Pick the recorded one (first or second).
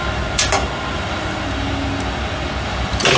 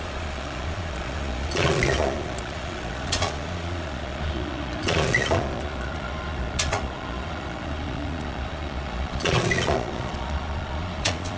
first